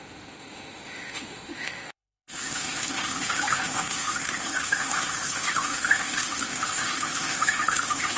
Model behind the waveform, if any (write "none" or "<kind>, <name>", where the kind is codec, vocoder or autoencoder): autoencoder, DAC-VAE